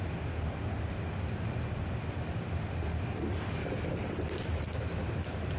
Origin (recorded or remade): recorded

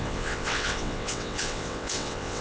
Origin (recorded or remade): remade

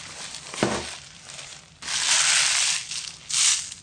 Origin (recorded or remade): recorded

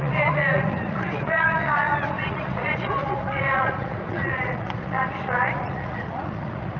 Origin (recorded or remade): remade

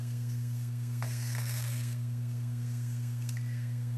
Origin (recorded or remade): remade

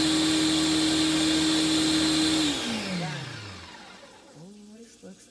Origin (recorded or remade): recorded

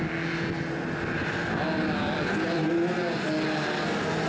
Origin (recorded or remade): recorded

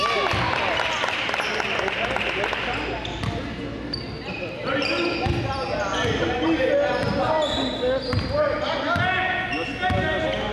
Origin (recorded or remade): recorded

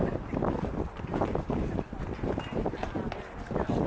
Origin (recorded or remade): recorded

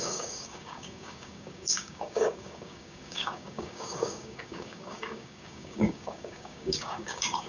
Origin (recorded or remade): remade